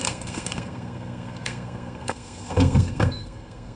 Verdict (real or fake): fake